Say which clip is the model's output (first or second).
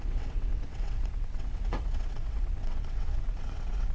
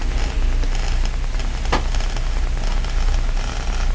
first